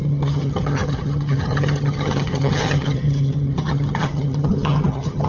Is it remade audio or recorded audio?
remade